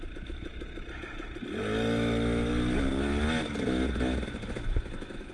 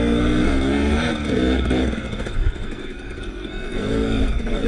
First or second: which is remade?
second